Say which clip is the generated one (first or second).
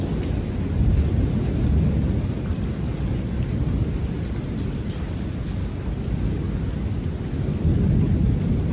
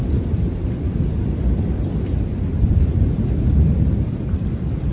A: second